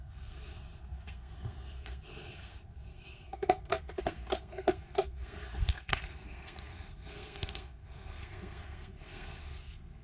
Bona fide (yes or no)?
no